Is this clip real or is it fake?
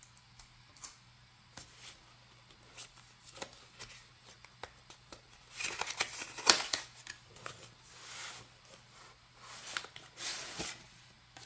real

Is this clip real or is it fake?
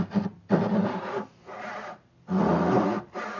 real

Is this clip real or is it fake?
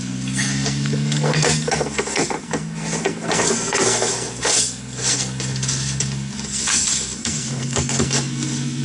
fake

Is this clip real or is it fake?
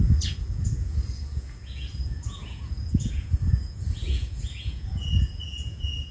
fake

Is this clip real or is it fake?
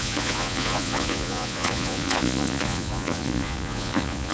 fake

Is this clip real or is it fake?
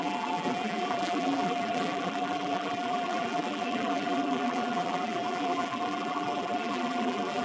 fake